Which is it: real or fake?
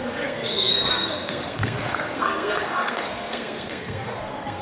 fake